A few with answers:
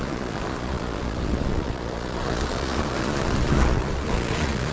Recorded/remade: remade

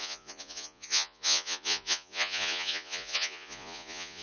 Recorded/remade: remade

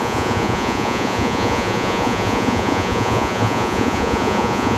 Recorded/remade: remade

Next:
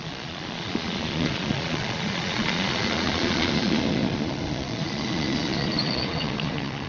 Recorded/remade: remade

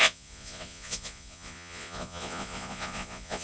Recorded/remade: remade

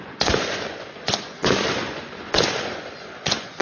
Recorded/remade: remade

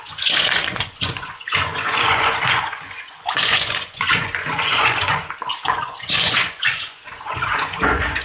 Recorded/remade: remade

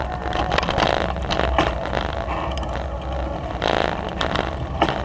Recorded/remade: recorded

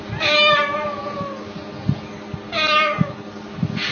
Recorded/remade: recorded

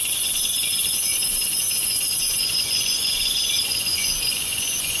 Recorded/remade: remade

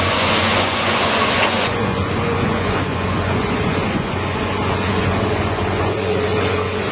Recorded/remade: remade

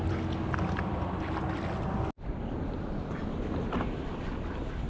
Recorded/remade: recorded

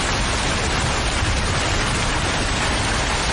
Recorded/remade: recorded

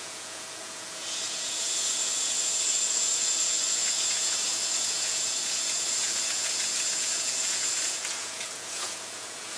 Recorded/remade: remade